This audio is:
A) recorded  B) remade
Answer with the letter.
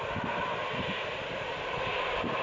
A